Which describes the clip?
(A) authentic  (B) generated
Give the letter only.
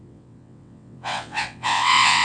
B